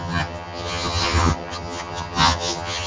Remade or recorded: remade